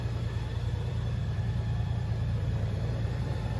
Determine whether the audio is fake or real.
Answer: fake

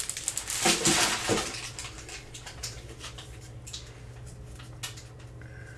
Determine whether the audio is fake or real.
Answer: real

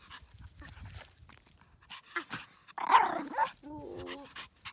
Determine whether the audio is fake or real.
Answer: real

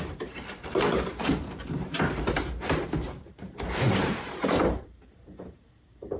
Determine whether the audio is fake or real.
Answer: fake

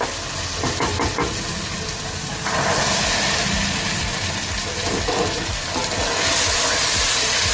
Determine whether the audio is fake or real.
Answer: real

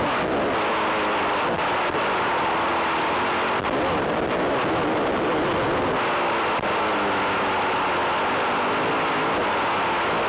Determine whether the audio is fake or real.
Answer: real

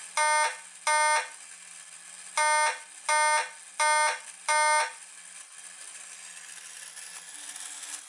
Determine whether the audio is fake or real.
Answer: real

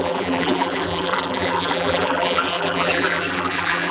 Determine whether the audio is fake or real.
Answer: fake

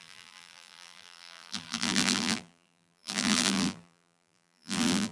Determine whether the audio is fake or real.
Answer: fake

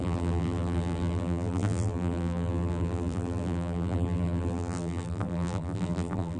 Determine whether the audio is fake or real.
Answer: fake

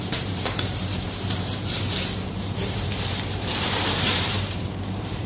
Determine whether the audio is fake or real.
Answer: fake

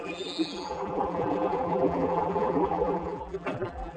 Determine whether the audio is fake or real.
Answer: fake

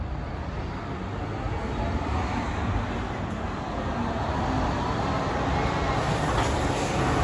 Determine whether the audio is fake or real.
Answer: real